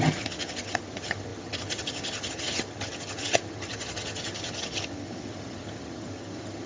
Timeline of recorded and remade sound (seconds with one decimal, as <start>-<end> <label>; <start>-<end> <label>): 0.0-6.7 remade